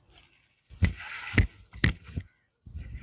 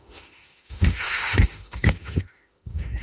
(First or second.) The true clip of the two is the first